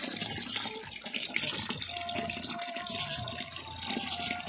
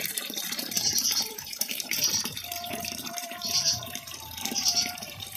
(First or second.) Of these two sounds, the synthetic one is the second